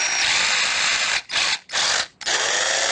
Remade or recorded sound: recorded